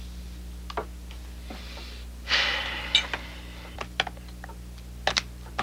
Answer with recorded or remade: recorded